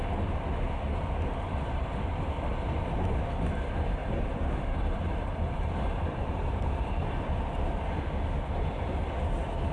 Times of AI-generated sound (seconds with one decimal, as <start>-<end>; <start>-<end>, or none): 1.3-2.1; 4.0-7.3